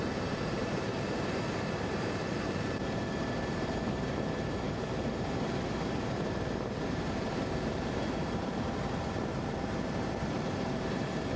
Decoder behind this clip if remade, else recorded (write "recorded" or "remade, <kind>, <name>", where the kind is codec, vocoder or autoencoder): remade, vocoder, BigVGAN v2